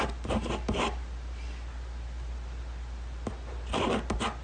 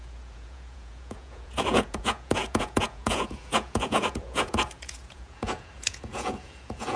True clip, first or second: first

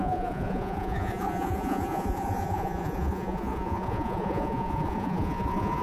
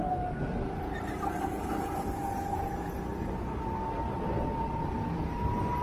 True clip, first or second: second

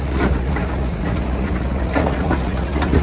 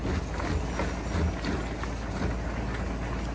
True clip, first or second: second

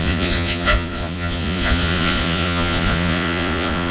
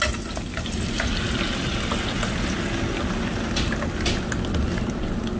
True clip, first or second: second